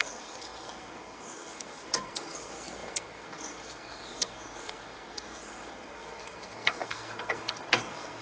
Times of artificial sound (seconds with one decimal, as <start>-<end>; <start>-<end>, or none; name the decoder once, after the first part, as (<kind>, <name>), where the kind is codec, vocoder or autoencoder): 0.0-8.2 (codec, SNAC)